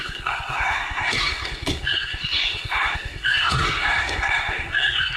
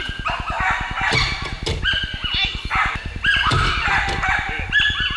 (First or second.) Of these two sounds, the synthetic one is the first